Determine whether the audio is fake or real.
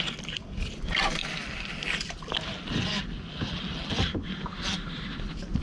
real